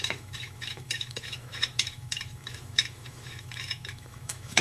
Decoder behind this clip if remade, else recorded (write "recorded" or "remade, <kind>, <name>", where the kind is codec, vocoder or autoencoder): remade, autoencoder, DAC-VAE